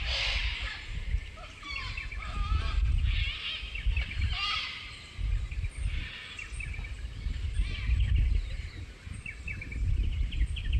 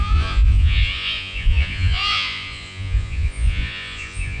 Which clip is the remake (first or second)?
second